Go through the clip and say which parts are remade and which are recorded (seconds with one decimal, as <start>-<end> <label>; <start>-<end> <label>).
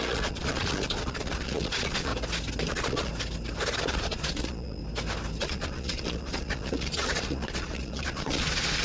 0.0-2.1 remade; 2.1-2.7 recorded; 2.7-3.1 remade; 3.1-3.9 recorded; 3.9-4.8 remade; 4.8-5.4 recorded; 5.4-8.8 remade